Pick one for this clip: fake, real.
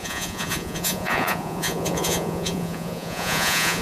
fake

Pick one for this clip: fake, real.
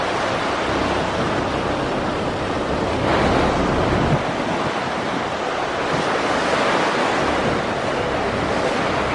real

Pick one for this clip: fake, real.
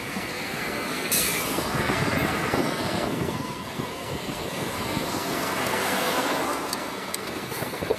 fake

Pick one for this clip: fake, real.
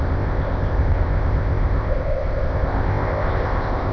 fake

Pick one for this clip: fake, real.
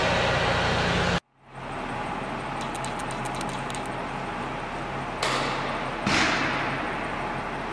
real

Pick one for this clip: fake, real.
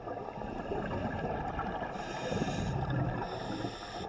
real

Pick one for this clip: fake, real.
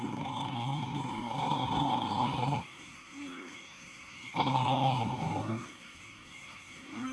fake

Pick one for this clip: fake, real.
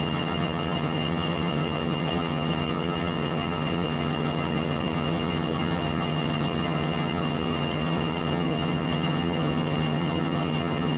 fake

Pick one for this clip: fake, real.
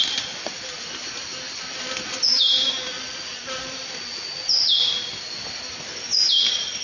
real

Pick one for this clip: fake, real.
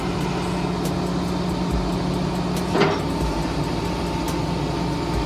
real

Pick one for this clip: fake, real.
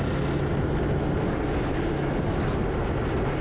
real